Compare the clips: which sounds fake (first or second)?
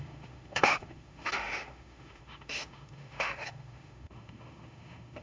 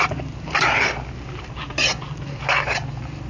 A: first